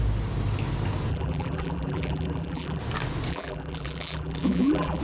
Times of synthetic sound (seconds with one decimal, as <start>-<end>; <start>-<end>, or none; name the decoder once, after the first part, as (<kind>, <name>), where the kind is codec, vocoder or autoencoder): 1.1-2.8 (vocoder, BigVGAN v2); 3.3-5.0